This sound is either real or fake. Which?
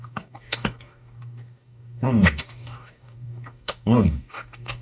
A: fake